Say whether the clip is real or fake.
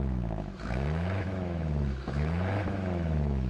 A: fake